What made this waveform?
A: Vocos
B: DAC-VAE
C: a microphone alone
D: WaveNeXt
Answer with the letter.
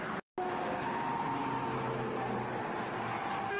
C